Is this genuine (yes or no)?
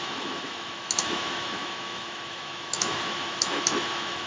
no